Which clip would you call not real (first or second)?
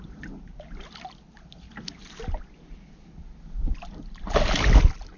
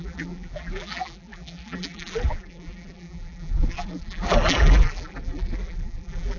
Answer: second